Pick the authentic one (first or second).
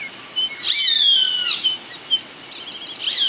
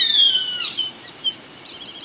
first